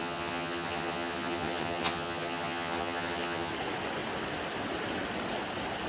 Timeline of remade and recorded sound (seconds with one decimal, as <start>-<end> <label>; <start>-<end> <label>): 0.0-3.5 remade; 3.5-5.9 recorded